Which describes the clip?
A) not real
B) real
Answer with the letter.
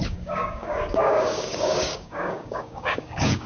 A